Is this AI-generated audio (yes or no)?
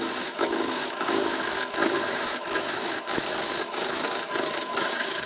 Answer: yes